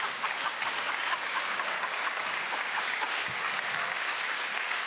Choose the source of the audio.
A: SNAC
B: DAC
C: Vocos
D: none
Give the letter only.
B